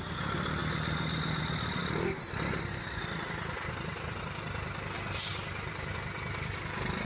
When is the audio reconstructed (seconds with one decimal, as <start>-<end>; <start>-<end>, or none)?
1.8-4.2; 5.3-5.9